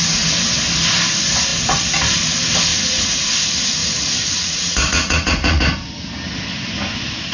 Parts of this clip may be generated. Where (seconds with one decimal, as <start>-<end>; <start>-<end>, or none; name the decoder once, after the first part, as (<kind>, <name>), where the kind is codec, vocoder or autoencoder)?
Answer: 2.7-3.2 (vocoder, Vocos); 3.8-5.6